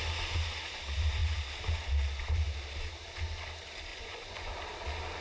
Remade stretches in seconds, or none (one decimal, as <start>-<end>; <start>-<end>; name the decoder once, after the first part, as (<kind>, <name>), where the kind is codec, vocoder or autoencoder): 3.9-4.5 (vocoder, Vocos)